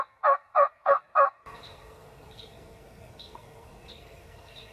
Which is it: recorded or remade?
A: remade